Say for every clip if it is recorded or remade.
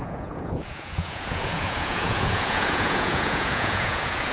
remade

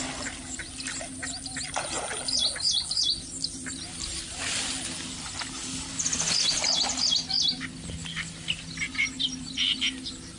recorded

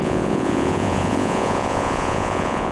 remade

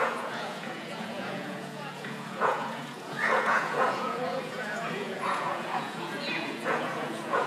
remade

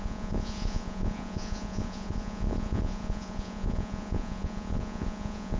remade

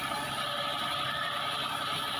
recorded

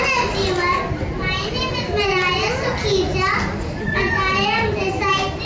recorded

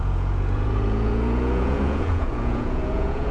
remade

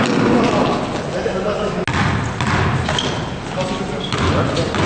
recorded